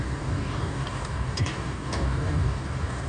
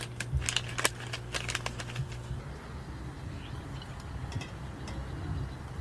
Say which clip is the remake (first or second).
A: first